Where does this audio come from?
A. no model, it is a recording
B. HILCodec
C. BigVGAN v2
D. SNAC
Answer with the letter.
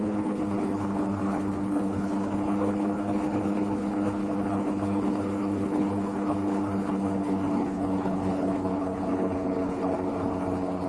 B